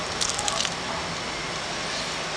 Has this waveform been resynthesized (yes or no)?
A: no